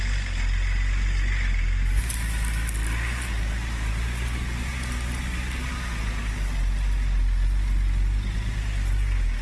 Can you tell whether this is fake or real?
real